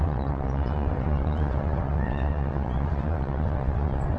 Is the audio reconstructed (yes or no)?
yes